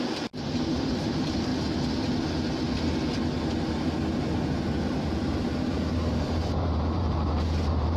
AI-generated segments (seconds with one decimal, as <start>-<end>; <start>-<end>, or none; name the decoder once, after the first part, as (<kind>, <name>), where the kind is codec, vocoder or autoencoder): 0.0-1.5 (vocoder, BigVGAN v2); 5.7-8.0